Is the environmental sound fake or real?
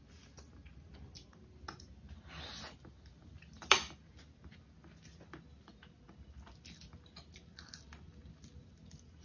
real